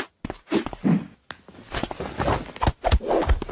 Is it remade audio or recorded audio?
recorded